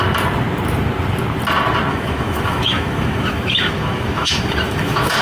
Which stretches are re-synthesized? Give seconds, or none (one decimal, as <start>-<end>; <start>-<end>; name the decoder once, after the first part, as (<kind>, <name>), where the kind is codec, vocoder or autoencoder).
1.9-5.2 (autoencoder, DAC-VAE)